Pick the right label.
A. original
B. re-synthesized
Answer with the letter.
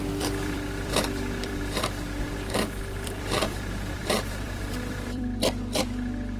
B